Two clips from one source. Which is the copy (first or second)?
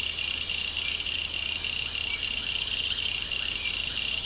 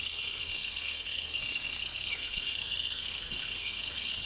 second